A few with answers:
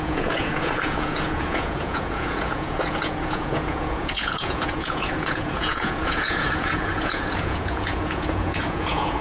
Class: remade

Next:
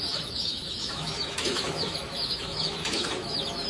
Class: remade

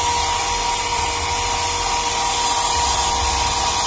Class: recorded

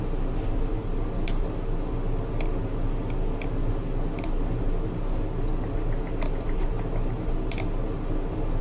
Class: recorded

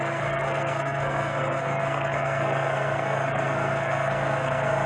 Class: remade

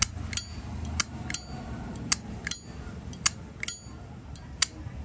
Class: recorded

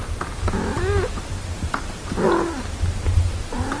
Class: recorded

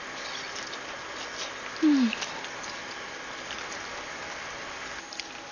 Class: recorded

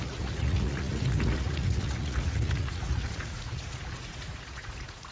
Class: remade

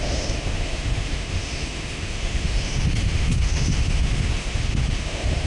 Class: remade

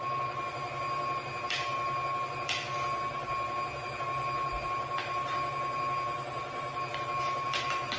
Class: recorded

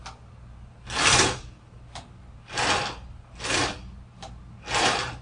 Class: recorded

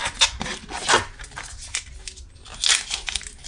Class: recorded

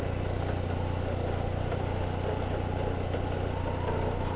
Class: recorded